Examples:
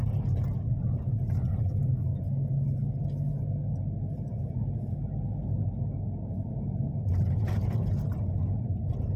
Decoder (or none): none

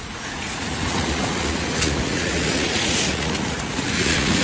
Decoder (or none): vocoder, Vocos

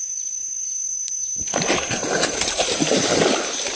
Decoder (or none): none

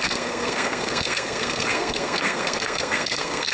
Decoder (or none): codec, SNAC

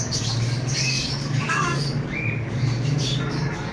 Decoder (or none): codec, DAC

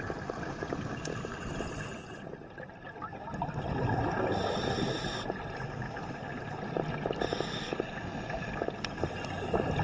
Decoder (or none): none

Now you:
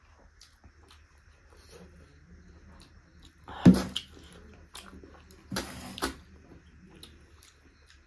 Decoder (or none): none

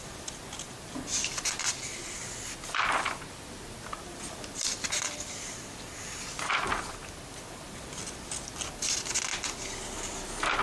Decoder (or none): none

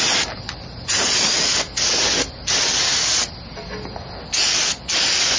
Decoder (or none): none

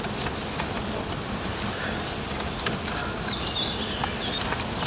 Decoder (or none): none